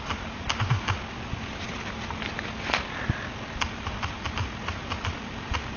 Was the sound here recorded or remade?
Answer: recorded